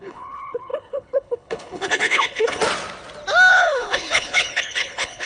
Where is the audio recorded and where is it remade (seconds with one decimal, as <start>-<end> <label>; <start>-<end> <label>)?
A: 0.0-2.6 remade; 2.6-3.5 recorded; 3.5-5.3 remade